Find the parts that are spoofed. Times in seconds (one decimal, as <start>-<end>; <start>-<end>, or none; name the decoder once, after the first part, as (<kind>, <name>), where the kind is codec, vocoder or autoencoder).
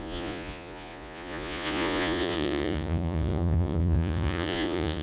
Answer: 0.0-5.0 (vocoder, Vocos)